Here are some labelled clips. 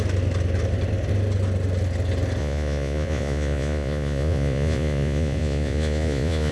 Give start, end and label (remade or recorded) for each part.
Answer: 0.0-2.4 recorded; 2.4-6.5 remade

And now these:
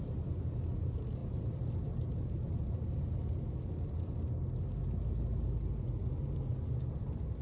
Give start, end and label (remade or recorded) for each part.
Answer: 0.0-7.4 recorded

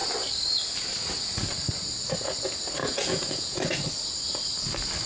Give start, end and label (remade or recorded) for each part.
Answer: 0.0-2.8 recorded; 2.8-3.7 remade; 3.7-5.1 recorded

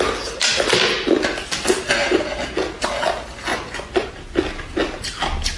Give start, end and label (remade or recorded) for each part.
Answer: 0.0-3.5 recorded; 3.5-4.1 remade; 4.1-5.6 recorded